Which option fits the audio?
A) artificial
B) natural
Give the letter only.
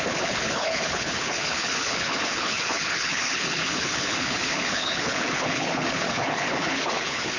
A